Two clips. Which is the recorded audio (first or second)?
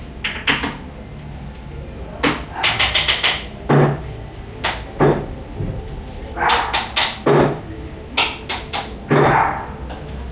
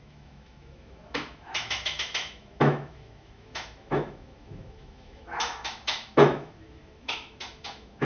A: first